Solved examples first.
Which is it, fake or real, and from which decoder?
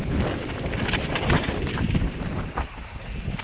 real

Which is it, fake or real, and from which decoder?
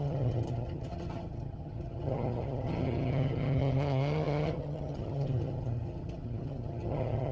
fake, vocoder, HiFi-GAN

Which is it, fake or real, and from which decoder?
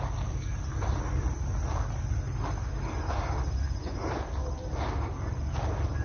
real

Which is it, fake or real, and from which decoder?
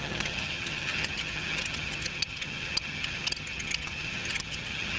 fake, vocoder, HiFi-GAN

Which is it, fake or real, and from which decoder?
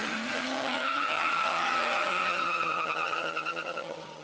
fake, vocoder, HiFi-GAN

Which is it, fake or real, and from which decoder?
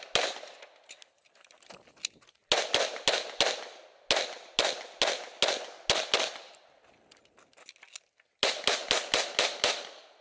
real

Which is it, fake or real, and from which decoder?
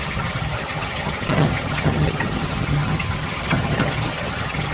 fake, vocoder, HiFi-GAN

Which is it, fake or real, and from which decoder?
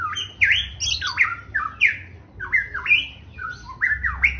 real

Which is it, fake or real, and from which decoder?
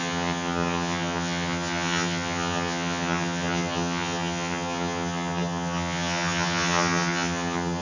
fake, vocoder, HiFi-GAN